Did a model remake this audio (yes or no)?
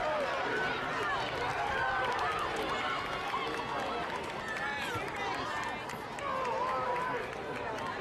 no